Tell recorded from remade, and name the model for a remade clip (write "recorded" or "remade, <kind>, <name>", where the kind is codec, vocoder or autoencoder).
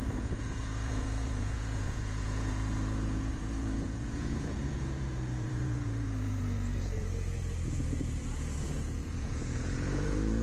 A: remade, vocoder, Vocos